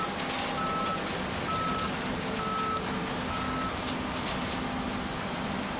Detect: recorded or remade recorded